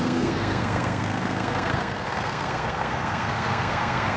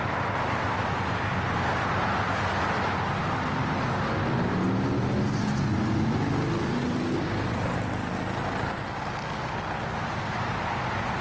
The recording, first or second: second